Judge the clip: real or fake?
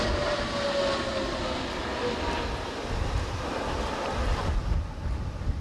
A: real